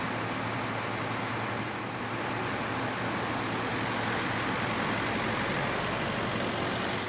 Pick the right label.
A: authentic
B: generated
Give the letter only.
A